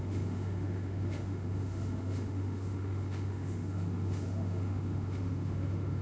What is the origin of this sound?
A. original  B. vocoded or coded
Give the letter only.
B